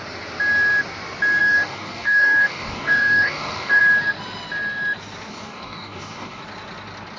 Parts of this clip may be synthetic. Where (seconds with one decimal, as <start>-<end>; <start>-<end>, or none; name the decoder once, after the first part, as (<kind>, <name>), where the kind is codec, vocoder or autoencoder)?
1.4-3.8 (codec, DAC); 5.3-6.4